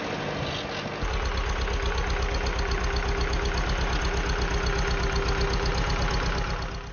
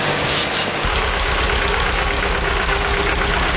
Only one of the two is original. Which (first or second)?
first